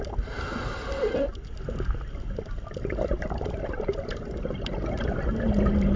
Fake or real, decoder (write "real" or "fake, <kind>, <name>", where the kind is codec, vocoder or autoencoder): real